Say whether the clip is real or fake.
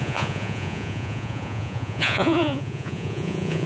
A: fake